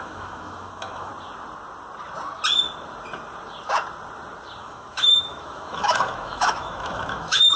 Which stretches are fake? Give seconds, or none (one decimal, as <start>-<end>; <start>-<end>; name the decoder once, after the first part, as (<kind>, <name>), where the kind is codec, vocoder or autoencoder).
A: 0.0-1.1 (autoencoder, DAC-VAE); 4.6-7.6